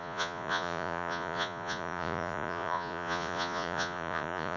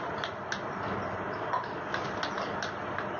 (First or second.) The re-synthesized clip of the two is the first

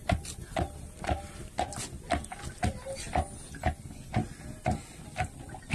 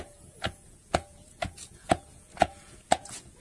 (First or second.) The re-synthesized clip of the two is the second